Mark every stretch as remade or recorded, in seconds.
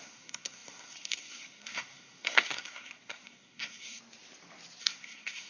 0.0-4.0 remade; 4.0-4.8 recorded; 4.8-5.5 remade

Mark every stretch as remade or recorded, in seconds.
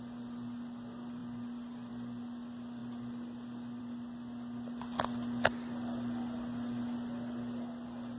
0.0-8.2 recorded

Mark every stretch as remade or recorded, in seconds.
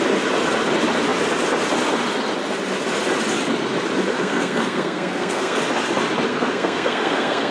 0.0-4.1 recorded; 4.1-5.6 remade; 5.6-6.3 recorded; 6.3-7.5 remade